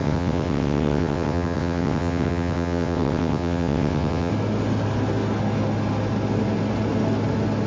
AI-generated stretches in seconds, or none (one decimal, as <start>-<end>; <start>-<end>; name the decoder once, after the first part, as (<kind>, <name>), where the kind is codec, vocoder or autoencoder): 0.0-4.3 (vocoder, WaveNeXt)